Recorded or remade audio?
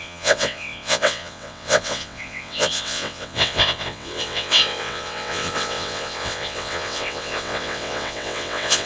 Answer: remade